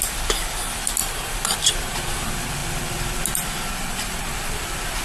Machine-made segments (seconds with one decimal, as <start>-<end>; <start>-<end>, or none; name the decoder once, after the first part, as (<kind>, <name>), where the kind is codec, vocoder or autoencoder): 0.0-5.0 (vocoder, BigVGAN v2)